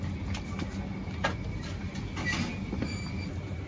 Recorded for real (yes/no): yes